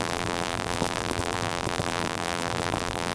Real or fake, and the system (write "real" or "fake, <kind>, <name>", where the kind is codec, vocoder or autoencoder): fake, vocoder, BigVGAN v2